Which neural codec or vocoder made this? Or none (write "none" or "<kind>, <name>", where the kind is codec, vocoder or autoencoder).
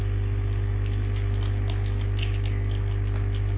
none